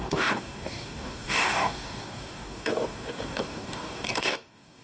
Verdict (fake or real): fake